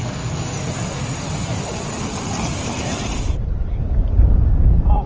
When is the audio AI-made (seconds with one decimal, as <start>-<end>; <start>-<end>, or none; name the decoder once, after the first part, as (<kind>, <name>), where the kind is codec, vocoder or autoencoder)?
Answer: 2.5-4.2 (vocoder, BigVGAN v2)